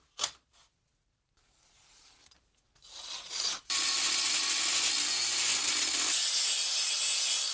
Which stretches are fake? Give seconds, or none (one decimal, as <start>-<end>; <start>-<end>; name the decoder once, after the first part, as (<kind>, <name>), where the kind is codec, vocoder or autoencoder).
0.5-3.6 (vocoder, BigVGAN v2)